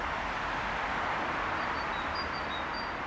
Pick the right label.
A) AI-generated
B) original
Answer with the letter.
B